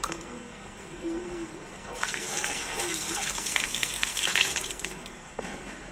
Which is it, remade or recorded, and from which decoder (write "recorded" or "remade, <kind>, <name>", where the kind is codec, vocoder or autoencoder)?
remade, codec, SNAC